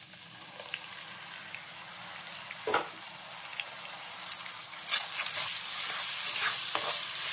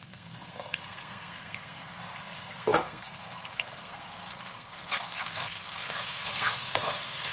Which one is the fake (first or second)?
second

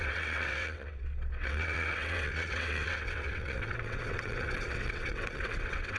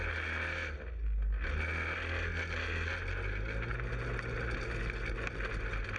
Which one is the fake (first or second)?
first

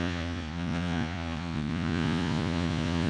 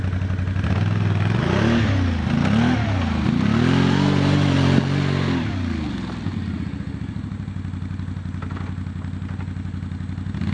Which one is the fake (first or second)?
first